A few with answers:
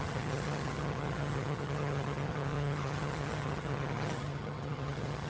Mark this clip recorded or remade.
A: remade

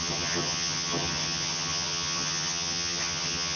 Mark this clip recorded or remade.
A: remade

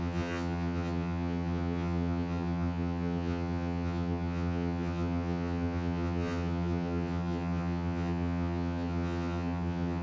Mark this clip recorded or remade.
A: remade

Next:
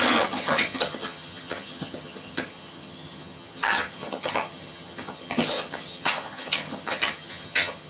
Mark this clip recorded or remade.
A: remade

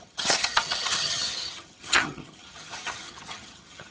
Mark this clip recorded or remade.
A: remade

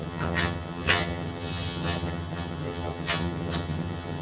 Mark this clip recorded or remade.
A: remade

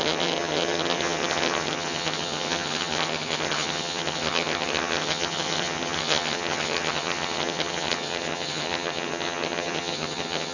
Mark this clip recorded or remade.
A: remade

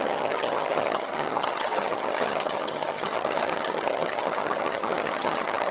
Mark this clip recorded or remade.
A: remade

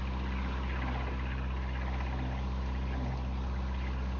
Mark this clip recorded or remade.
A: recorded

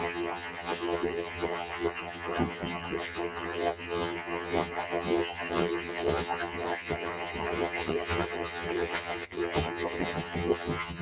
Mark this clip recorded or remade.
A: remade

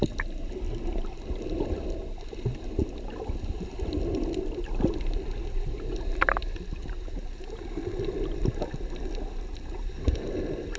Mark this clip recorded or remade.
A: recorded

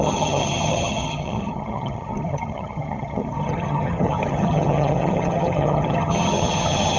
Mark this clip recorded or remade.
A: remade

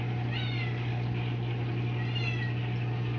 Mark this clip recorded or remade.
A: recorded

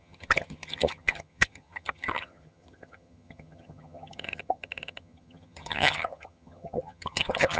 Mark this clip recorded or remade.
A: remade